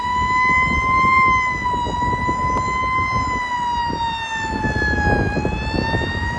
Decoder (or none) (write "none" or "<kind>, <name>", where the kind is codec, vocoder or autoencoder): none